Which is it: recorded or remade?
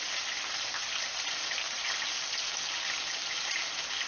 recorded